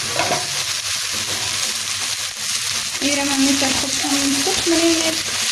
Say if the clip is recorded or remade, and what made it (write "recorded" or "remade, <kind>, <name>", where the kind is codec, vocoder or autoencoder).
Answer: recorded